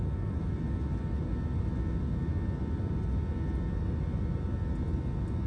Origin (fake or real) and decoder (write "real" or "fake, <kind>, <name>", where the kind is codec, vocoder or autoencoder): real